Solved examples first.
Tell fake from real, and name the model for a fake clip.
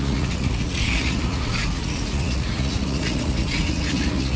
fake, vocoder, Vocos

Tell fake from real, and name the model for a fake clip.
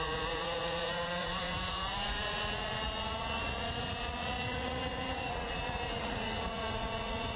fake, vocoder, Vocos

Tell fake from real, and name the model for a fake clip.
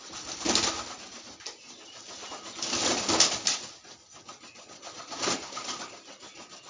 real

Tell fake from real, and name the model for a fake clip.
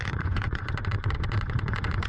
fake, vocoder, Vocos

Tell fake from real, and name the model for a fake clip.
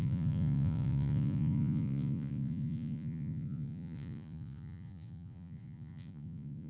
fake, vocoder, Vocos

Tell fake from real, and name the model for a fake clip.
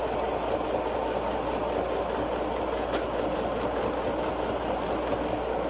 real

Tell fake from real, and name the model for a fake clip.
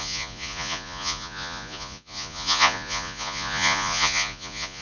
fake, vocoder, Vocos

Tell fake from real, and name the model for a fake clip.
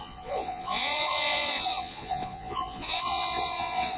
fake, vocoder, Vocos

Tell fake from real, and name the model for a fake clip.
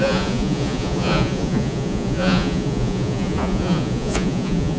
fake, vocoder, Vocos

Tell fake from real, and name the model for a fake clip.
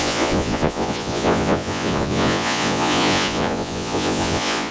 fake, vocoder, Vocos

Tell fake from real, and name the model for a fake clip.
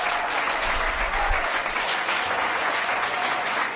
fake, vocoder, Vocos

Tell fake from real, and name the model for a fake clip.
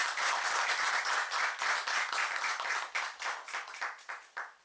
real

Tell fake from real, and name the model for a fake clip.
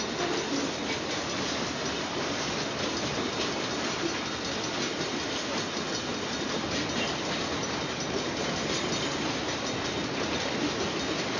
real